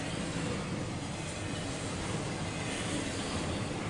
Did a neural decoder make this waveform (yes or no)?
no